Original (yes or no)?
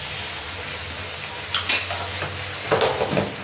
yes